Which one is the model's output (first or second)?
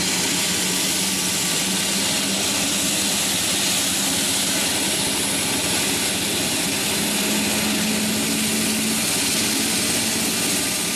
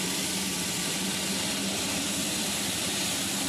second